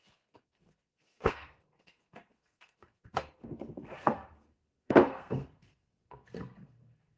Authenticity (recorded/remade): remade